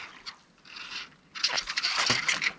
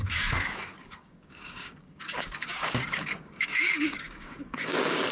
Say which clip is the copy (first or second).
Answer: second